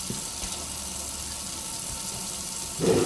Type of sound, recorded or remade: recorded